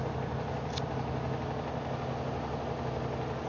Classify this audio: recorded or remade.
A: recorded